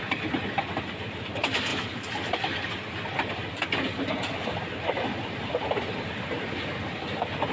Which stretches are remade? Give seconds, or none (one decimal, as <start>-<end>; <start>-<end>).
none